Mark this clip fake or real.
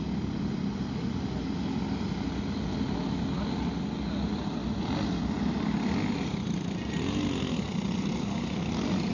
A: real